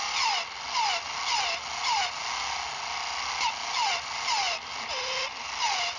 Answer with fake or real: real